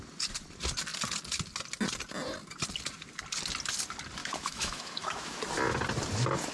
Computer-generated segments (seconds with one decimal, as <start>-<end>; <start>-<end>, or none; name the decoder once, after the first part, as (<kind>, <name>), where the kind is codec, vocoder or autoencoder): 4.2-5.4 (autoencoder, DAC-VAE)